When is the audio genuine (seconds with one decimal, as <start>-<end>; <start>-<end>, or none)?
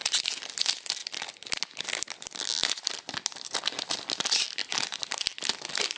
0.0-6.0